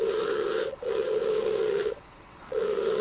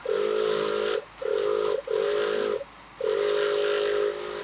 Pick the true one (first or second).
second